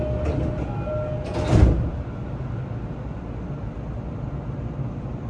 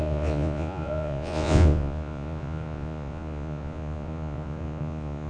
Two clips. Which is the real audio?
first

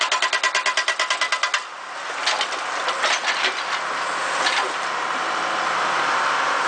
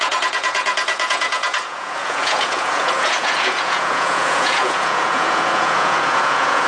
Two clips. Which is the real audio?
first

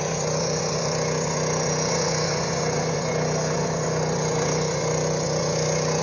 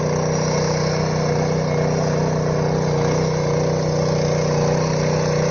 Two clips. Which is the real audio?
second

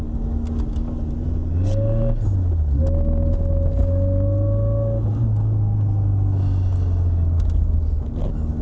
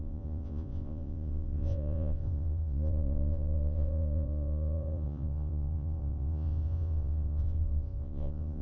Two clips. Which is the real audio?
first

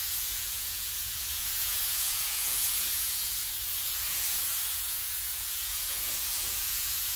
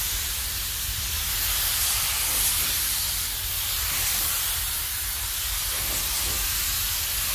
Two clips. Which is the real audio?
second